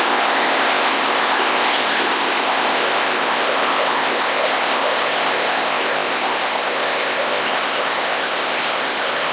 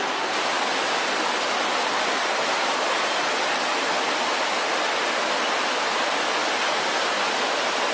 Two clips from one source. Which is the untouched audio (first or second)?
second